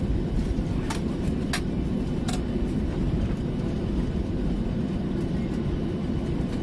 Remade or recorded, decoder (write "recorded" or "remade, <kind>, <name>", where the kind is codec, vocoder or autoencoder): recorded